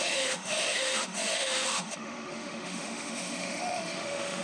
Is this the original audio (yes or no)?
no